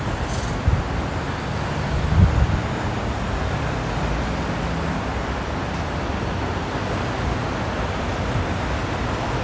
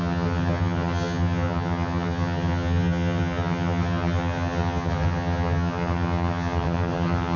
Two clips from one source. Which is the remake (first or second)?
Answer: second